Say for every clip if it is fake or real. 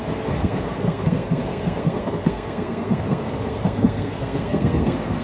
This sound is fake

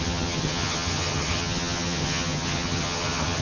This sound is fake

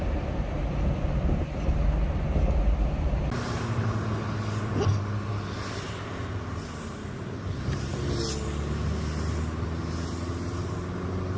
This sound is real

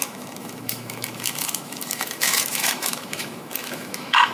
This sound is fake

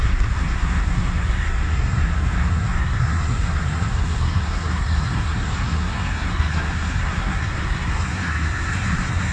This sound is fake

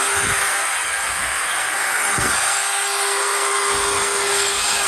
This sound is fake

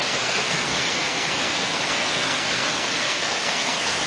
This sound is fake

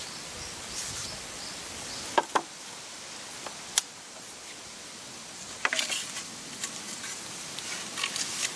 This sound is real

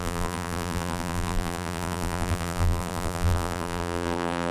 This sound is fake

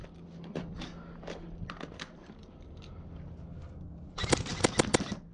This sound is real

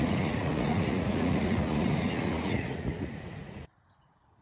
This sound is fake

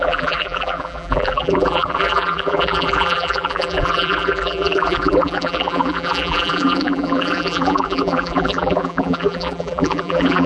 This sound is fake